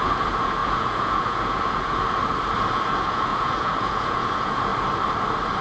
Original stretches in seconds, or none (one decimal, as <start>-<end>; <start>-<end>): 2.2-2.7; 4.7-5.6